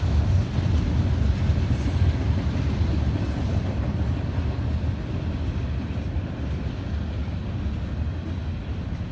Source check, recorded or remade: recorded